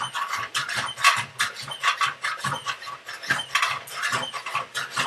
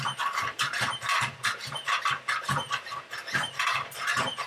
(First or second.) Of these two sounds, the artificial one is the second